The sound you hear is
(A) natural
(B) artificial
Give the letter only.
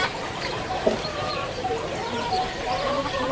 B